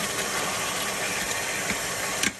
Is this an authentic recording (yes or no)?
yes